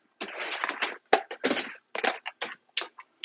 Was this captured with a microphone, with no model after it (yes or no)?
yes